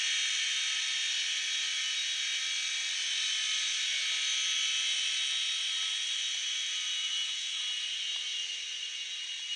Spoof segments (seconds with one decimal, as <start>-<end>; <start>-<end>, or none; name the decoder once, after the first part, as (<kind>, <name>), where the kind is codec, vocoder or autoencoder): 7.0-7.6 (autoencoder, DAC-VAE)